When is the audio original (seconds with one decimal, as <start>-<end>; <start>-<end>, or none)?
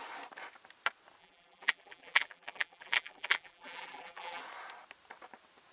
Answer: 0.0-1.2; 4.4-5.7